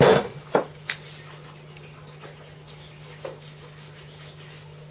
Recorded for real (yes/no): yes